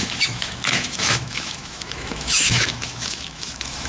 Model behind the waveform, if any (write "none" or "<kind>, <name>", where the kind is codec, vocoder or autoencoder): autoencoder, DAC-VAE